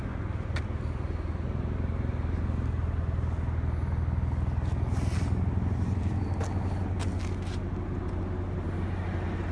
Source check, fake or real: real